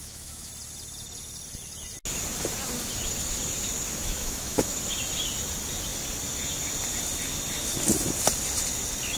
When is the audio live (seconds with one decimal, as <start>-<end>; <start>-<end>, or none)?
0.5-4.0; 4.8-9.2